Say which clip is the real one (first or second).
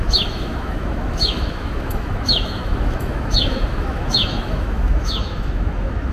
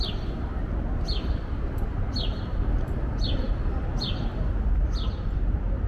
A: second